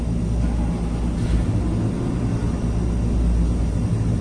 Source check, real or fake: real